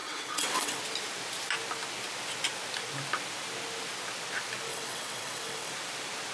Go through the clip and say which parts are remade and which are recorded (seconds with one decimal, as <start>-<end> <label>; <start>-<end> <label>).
0.0-0.8 remade; 0.8-4.7 recorded; 4.7-5.7 remade; 5.7-6.3 recorded